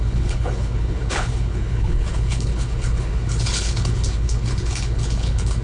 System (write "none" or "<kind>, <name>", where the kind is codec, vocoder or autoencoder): codec, HILCodec